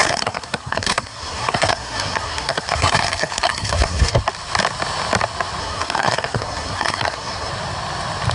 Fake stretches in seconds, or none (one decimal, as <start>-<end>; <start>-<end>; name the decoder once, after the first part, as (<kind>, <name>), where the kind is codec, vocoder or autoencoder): 0.0-4.2 (codec, SNAC); 5.6-7.5